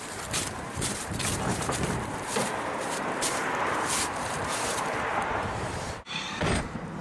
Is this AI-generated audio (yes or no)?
yes